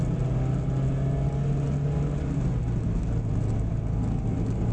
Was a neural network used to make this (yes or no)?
no